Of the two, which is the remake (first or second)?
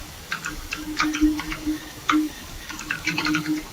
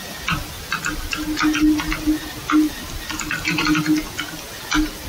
first